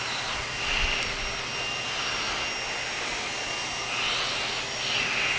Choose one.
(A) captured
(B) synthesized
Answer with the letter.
A